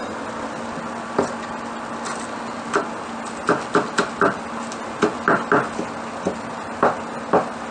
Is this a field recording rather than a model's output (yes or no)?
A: yes